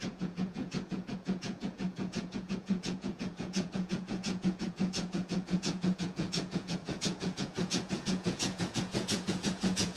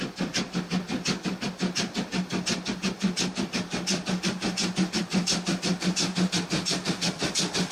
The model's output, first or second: first